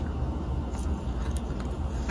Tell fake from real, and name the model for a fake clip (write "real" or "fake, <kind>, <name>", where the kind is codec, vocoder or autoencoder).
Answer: real